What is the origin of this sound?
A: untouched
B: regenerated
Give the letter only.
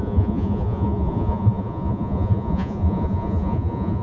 B